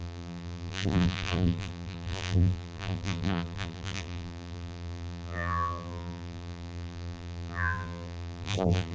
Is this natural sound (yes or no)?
no